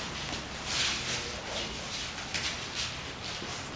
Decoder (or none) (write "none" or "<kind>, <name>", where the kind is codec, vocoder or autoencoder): none